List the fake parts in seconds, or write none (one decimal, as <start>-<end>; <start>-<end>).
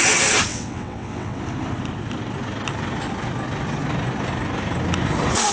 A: 0.5-1.4